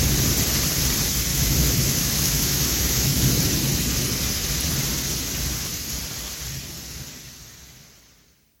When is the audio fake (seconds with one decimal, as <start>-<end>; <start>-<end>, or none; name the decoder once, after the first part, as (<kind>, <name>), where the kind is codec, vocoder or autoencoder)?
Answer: 1.3-3.2 (autoencoder, DAC-VAE)